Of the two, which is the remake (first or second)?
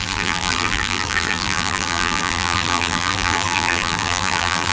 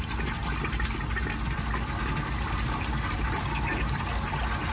first